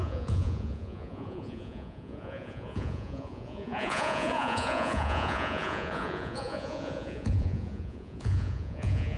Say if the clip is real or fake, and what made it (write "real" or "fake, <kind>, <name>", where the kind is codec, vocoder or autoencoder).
fake, vocoder, Vocos